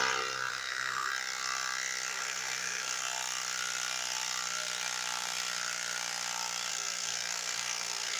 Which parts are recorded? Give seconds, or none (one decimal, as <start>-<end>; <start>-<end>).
0.0-0.5; 1.1-2.1; 3.0-6.7